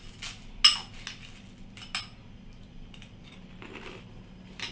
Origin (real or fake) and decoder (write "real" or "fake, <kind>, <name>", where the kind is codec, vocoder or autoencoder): real